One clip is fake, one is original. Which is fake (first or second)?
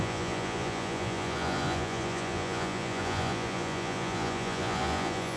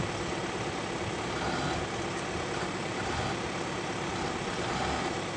first